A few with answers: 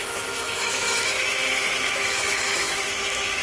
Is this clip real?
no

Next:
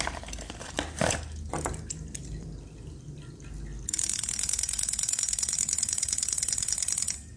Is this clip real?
yes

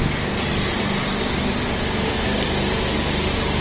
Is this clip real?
yes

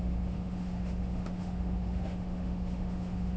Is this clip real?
no